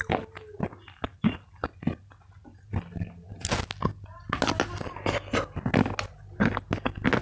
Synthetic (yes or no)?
no